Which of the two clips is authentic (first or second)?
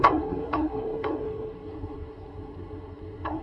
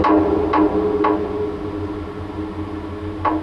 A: second